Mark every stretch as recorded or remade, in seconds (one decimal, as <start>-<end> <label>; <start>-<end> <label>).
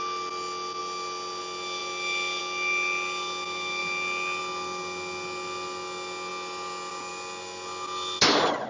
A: 0.0-8.7 recorded